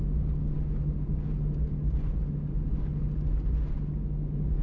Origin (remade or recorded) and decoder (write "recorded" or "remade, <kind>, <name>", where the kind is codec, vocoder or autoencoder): recorded